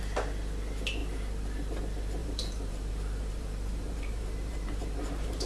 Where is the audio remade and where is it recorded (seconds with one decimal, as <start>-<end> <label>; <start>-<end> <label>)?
0.0-2.2 recorded; 2.2-5.5 remade